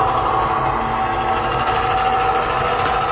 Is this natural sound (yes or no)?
yes